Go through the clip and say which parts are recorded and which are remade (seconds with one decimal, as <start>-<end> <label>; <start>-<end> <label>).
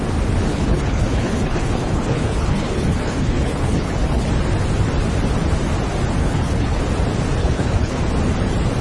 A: 0.0-0.5 recorded; 0.5-4.3 remade; 4.3-6.2 recorded; 6.2-6.8 remade; 6.8-7.4 recorded; 7.4-8.0 remade; 8.0-8.8 recorded